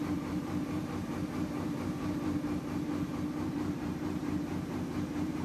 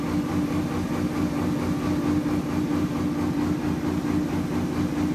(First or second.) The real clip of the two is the second